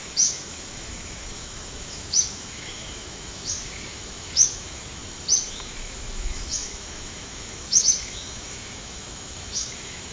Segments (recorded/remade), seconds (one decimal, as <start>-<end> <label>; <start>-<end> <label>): 0.0-5.0 remade; 5.0-5.5 recorded; 5.5-10.1 remade